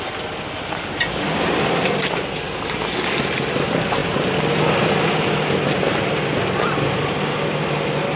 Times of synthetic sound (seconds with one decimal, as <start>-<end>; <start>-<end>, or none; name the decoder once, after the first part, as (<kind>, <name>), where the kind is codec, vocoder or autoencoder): none